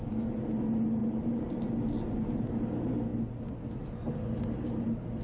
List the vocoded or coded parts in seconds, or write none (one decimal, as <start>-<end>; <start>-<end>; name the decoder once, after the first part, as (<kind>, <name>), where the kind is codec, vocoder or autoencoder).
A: 1.0-1.7 (vocoder, BigVGAN v2)